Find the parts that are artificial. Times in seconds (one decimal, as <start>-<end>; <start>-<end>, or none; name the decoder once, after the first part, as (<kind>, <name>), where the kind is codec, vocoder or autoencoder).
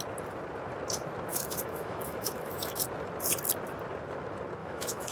1.3-2.8 (autoencoder, DAC-VAE); 4.6-5.1